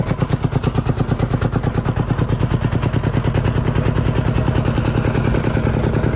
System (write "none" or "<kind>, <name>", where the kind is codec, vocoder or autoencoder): none